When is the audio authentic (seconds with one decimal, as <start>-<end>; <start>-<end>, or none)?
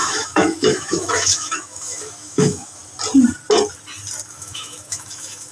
2.8-4.3